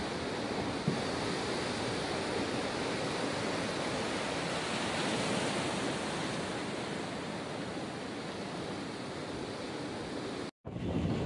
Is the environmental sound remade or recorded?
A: recorded